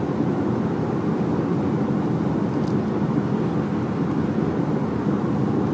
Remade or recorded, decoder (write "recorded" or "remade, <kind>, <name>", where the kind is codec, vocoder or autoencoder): recorded